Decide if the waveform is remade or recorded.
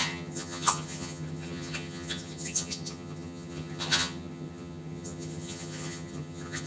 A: remade